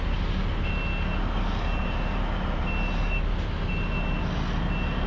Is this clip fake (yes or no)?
no